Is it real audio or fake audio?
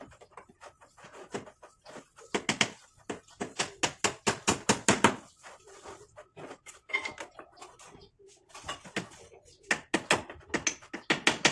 real